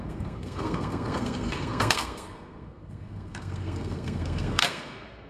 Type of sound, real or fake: fake